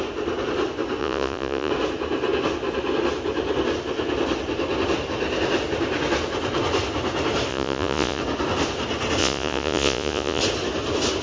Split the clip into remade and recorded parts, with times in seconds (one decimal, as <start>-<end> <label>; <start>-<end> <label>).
0.0-1.0 recorded; 1.0-1.7 remade; 1.7-7.5 recorded; 7.5-8.2 remade; 8.2-9.2 recorded; 9.2-10.4 remade; 10.4-11.2 recorded